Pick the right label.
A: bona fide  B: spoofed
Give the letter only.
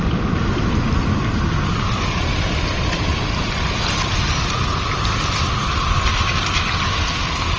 A